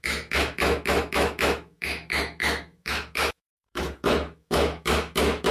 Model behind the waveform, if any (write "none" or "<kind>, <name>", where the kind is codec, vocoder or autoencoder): autoencoder, DAC-VAE